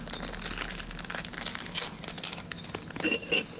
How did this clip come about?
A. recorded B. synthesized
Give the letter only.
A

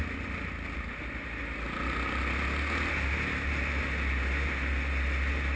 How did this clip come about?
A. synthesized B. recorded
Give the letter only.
B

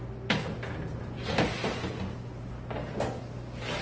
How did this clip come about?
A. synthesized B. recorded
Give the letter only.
B